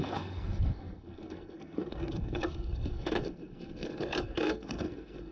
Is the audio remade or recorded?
remade